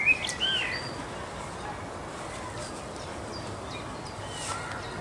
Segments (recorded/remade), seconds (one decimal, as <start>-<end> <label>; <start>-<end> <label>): 0.0-2.0 recorded; 2.0-3.2 remade; 3.2-5.0 recorded